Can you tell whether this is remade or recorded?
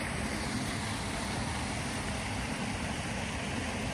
recorded